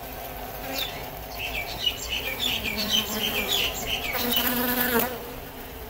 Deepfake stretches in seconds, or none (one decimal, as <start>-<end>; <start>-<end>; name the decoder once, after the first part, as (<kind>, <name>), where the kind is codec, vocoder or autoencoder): 1.0-4.5 (vocoder, BigVGAN v2)